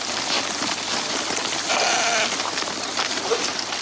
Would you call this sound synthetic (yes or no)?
yes